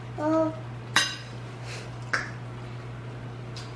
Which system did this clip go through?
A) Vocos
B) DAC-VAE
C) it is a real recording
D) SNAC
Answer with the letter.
C